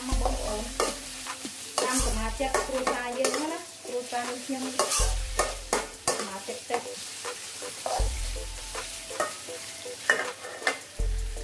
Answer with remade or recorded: remade